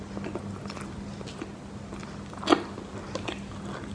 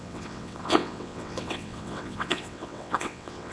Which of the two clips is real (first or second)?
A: first